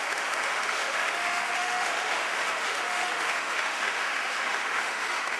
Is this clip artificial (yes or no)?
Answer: yes